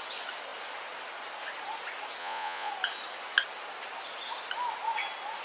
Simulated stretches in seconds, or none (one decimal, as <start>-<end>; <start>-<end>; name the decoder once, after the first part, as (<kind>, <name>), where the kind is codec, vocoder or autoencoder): 2.2-2.7 (vocoder, Vocos)